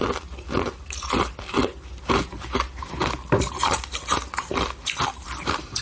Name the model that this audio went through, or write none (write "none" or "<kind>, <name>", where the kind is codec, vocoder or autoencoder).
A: none